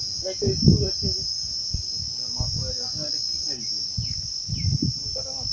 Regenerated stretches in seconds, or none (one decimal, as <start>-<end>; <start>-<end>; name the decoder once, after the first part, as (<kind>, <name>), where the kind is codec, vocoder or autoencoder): none